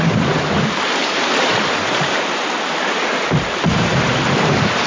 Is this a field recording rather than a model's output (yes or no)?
no